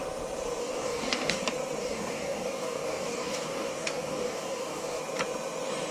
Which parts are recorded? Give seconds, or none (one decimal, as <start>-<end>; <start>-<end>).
0.0-0.6; 1.4-1.8; 5.0-5.9